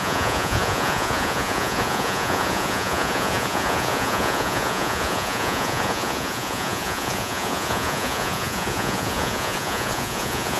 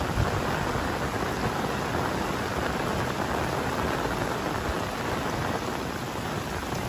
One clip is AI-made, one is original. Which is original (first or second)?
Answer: second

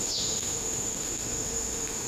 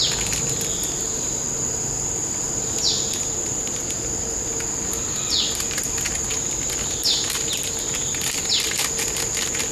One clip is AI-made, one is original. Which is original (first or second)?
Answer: second